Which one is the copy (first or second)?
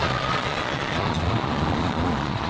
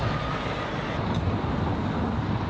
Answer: first